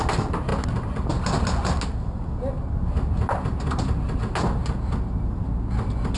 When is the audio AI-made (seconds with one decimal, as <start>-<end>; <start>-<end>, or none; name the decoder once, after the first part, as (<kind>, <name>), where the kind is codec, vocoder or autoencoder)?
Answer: none